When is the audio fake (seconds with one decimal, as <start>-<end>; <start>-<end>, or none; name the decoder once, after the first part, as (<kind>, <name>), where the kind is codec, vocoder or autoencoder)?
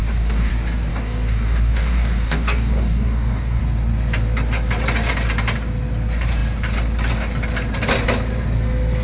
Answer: 0.0-0.5 (codec, DAC); 0.9-3.6